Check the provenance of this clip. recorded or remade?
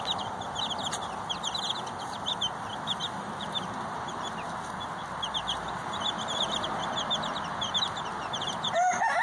recorded